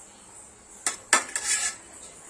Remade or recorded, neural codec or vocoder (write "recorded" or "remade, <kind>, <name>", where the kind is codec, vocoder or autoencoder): recorded